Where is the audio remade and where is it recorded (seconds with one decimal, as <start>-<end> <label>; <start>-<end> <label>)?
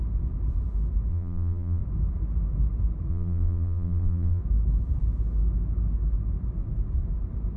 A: 0.0-1.1 recorded; 1.1-1.8 remade; 1.8-3.1 recorded; 3.1-4.4 remade; 4.4-7.6 recorded